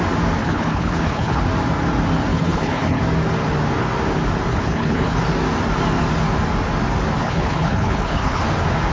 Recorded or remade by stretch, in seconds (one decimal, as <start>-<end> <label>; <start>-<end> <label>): 0.0-0.4 recorded; 0.4-1.4 remade; 1.4-2.3 recorded; 2.3-3.0 remade; 3.0-4.5 recorded; 4.5-5.2 remade; 5.2-7.2 recorded; 7.2-8.4 remade; 8.4-8.9 recorded